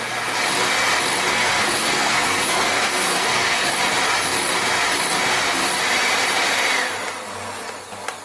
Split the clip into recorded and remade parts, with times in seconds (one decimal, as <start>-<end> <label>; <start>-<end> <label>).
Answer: 0.0-1.3 recorded; 1.3-3.7 remade; 3.7-8.2 recorded